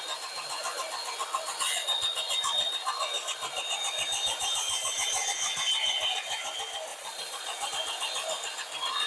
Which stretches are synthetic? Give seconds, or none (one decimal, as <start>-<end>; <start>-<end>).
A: 6.9-7.7